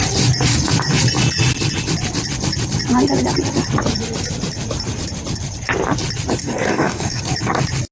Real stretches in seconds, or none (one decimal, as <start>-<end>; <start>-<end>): 0.0-6.4; 7.2-7.9